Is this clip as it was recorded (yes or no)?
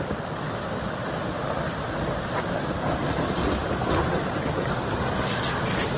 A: yes